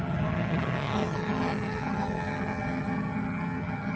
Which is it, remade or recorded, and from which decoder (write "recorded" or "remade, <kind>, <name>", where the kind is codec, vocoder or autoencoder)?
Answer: remade, vocoder, HiFi-GAN